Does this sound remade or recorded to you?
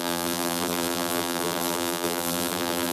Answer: remade